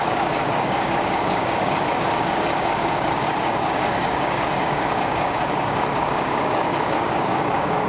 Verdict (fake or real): fake